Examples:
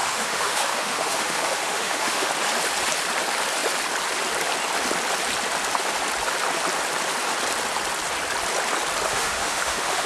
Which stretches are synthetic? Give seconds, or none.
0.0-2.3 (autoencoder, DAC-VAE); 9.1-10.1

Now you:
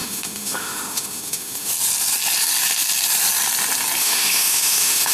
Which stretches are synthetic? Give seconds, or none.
0.0-1.7 (autoencoder, DAC-VAE); 4.0-5.1

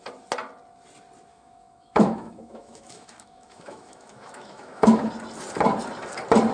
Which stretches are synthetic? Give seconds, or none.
1.3-5.1 (autoencoder, DAC-VAE)

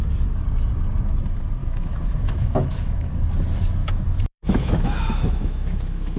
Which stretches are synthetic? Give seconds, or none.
1.6-3.1 (autoencoder, DAC-VAE); 3.8-6.2

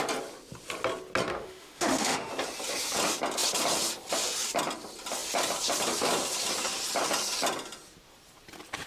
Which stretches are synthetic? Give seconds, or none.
1.3-2.3 (autoencoder, DAC-VAE)

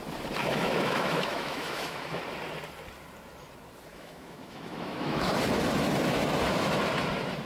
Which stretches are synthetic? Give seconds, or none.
0.4-2.2 (autoencoder, DAC-VAE); 3.9-5.3